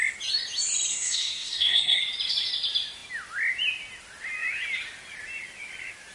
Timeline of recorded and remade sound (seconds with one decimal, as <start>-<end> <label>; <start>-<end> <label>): 0.0-0.9 recorded; 0.9-2.0 remade; 2.0-6.1 recorded